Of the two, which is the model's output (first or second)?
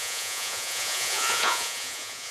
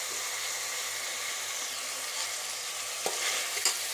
first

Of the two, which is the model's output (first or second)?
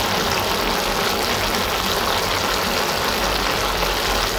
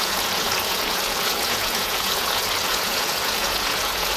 second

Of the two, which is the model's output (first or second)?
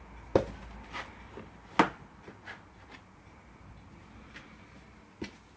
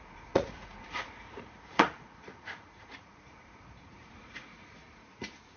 second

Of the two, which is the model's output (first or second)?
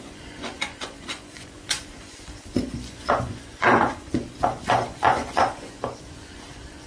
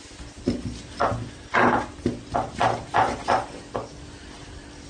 first